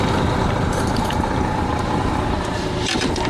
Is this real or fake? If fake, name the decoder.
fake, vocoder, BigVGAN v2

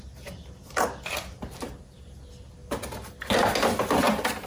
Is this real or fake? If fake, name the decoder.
real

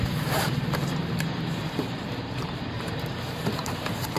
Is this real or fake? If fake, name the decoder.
fake, vocoder, BigVGAN v2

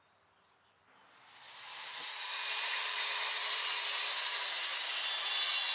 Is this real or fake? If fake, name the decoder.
real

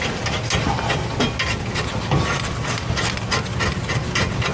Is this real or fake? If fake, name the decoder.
real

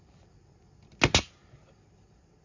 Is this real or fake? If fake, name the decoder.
real